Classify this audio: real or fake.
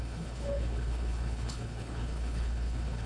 fake